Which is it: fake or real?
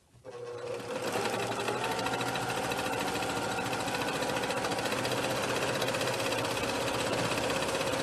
real